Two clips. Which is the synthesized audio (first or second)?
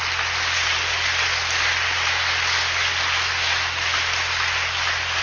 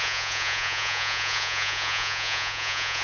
second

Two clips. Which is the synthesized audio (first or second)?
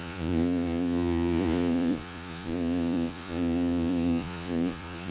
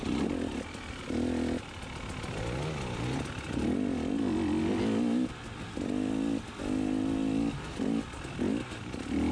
first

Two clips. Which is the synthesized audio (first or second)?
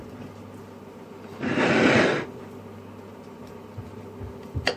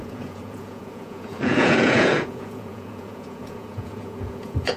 second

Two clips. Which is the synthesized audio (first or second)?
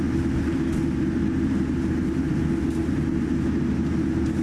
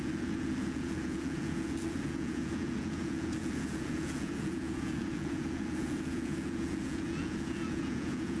second